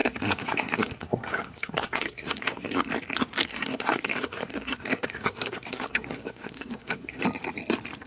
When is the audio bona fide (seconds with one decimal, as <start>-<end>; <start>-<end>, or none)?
2.9-3.5; 7.2-8.1